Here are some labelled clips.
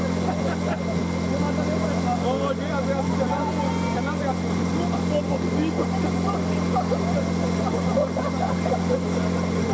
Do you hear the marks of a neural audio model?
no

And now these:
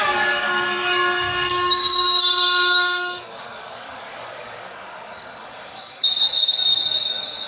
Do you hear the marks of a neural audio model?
yes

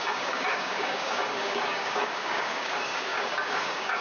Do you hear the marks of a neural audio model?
yes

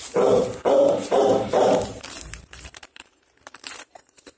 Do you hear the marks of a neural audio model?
yes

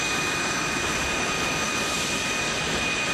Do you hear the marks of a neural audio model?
no